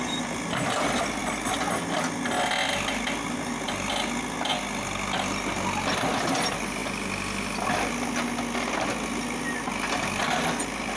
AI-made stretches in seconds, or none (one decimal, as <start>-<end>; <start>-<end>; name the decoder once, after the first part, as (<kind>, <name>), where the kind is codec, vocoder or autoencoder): none

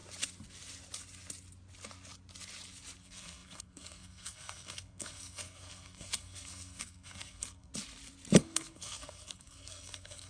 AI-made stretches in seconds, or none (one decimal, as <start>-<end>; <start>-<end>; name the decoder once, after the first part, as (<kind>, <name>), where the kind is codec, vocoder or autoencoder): 3.0-7.7 (codec, SNAC); 8.4-10.3

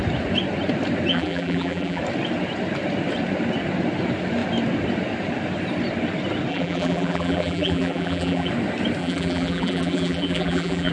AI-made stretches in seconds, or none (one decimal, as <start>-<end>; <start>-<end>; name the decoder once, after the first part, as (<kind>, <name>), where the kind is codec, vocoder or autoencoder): 1.1-2.0 (vocoder, BigVGAN v2); 6.5-8.5; 9.0-10.9